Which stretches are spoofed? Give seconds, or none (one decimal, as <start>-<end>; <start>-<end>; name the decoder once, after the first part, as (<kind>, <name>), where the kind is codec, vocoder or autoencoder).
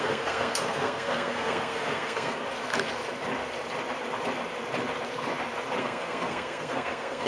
0.0-2.4 (codec, SNAC); 5.8-7.3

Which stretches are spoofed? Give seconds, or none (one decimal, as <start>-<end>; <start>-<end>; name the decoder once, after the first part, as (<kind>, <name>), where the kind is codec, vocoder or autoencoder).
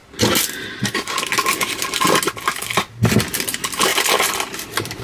none